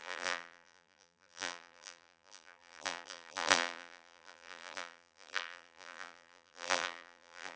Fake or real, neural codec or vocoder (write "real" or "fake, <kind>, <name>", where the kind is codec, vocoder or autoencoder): fake, vocoder, BigVGAN v2